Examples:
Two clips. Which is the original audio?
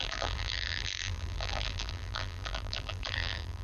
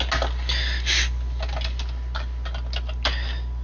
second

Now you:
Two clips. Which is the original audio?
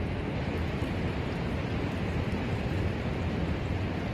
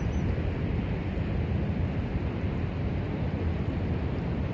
first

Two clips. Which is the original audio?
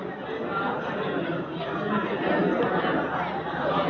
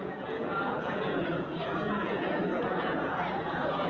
first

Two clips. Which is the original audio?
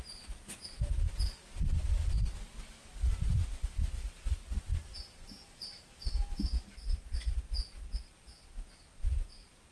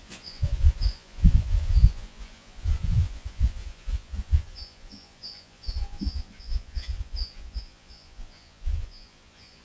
first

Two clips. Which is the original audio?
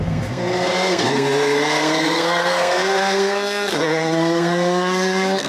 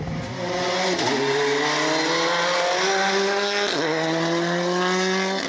second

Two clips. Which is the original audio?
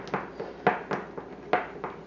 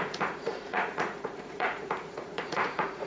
first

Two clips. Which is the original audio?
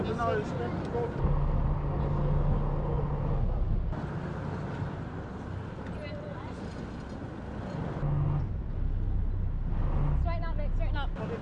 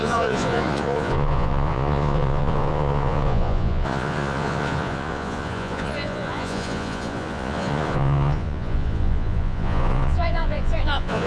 first